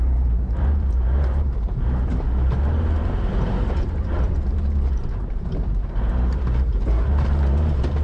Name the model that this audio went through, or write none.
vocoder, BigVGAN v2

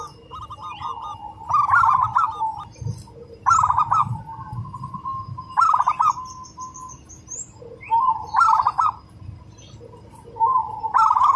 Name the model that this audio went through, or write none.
none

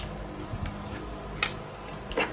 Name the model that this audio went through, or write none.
none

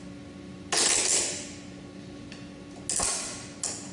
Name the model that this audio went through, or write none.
none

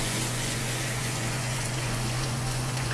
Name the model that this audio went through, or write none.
vocoder, Vocos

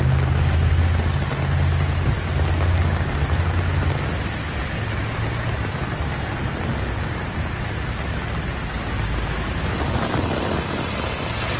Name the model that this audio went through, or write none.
none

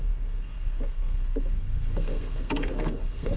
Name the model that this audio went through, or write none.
codec, SNAC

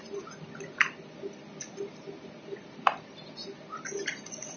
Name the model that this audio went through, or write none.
none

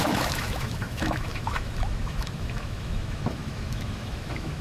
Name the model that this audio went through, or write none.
autoencoder, DAC-VAE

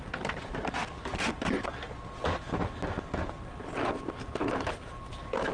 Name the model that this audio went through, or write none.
none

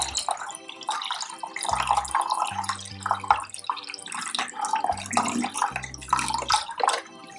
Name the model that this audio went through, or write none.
none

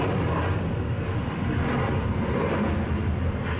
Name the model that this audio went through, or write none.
none